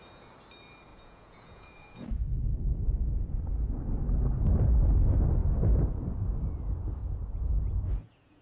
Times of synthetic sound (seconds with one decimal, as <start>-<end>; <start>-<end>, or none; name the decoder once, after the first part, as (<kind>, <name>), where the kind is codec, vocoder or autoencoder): 0.9-2.7 (vocoder, Vocos); 7.0-8.4